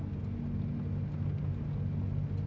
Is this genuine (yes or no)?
yes